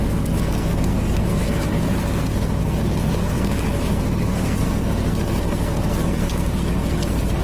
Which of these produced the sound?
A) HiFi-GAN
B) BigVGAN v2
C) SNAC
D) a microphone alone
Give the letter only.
C